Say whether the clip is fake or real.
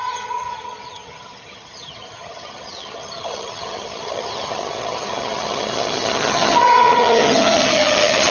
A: fake